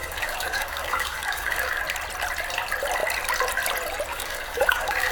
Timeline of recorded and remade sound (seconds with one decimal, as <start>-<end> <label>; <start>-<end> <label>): 0.0-1.8 remade; 1.8-4.1 recorded; 4.1-5.1 remade